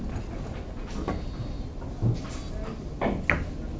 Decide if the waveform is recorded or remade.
recorded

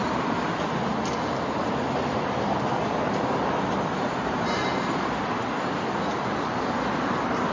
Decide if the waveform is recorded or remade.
recorded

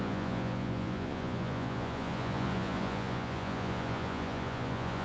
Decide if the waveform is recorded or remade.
remade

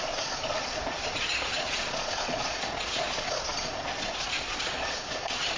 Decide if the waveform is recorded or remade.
remade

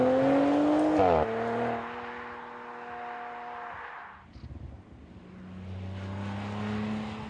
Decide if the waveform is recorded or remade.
recorded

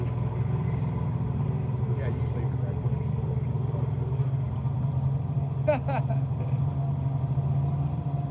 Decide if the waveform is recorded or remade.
recorded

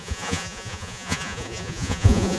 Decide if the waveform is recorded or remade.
remade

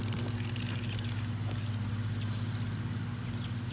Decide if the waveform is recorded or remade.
recorded